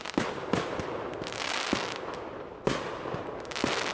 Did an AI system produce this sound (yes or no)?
no